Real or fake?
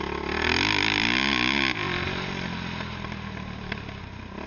real